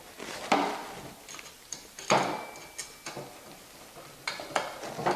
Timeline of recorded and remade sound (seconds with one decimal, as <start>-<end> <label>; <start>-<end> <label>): 0.0-0.8 recorded; 0.8-2.4 remade; 2.4-5.2 recorded